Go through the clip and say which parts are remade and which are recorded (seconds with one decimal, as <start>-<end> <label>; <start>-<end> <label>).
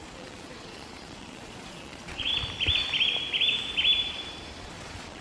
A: 0.0-2.3 remade; 2.3-4.6 recorded; 4.6-5.2 remade